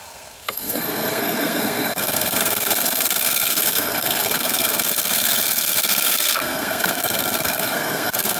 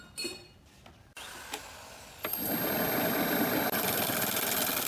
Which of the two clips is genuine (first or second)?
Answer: second